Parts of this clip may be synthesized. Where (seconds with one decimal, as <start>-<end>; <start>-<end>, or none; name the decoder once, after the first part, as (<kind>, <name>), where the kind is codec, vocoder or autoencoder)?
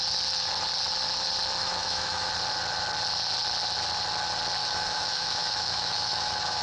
1.6-2.3 (autoencoder, DAC-VAE); 4.6-6.6